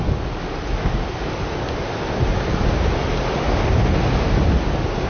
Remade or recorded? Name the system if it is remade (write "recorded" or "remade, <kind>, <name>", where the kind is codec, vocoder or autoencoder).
recorded